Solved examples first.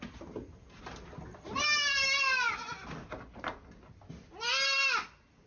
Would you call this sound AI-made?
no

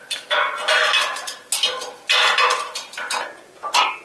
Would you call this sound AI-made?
no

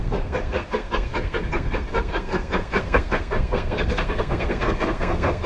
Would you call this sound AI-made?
yes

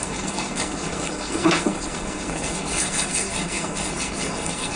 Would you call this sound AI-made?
yes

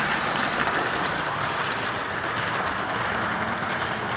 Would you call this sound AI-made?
no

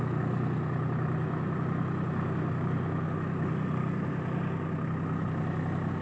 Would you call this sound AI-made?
no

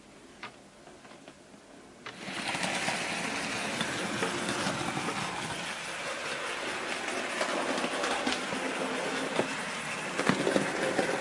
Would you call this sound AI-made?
no